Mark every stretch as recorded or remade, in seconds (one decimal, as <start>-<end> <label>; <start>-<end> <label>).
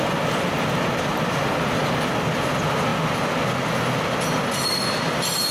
0.0-5.5 recorded